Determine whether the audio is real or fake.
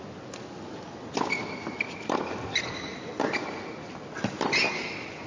real